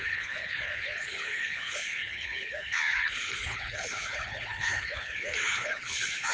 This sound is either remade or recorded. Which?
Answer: remade